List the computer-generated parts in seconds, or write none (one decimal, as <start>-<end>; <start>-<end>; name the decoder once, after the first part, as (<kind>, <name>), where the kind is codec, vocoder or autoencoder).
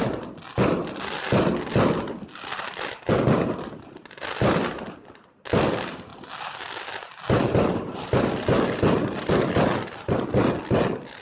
none